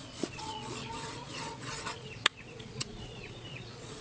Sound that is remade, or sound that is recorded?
remade